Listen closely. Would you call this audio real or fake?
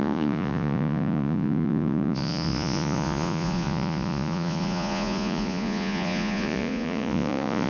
fake